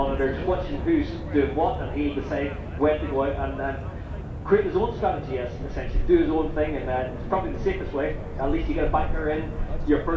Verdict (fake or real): real